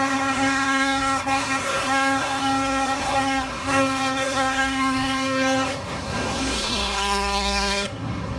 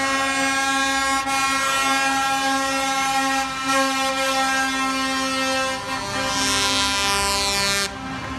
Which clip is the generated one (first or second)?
first